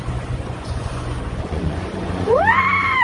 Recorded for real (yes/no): no